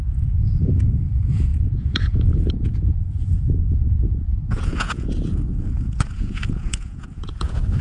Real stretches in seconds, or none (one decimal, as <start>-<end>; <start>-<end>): none